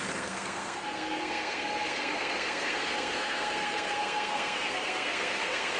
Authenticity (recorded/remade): remade